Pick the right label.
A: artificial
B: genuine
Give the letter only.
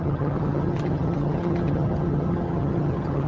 A